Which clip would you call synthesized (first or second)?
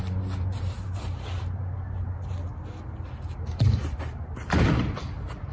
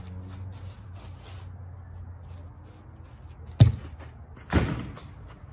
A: first